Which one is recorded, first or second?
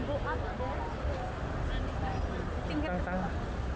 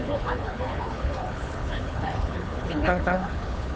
first